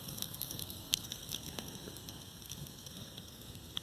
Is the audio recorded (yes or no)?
no